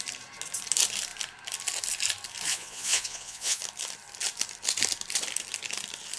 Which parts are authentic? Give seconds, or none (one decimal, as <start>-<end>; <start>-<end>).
0.0-2.5; 3.6-6.2